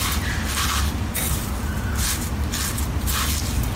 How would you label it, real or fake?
real